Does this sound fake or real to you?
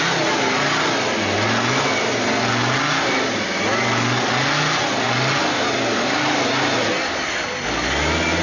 real